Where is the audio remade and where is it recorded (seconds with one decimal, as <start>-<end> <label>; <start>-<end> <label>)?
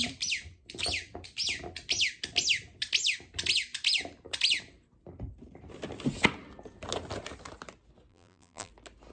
0.0-8.1 recorded; 8.1-8.7 remade; 8.7-9.1 recorded